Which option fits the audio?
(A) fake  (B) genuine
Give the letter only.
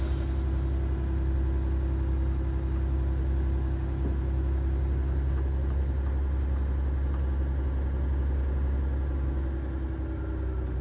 B